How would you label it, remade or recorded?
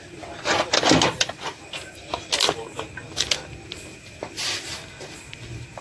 recorded